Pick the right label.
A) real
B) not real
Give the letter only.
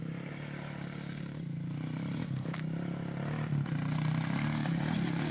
A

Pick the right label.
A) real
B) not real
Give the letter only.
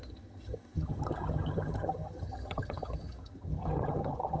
B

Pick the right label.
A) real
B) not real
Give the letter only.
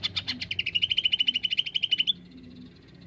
A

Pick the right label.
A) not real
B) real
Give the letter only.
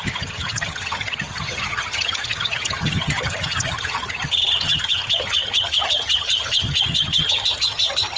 A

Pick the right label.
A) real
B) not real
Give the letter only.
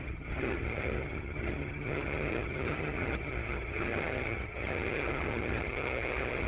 B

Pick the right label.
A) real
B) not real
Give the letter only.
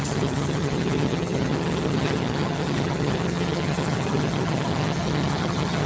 B